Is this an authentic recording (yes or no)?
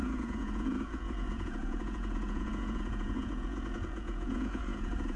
no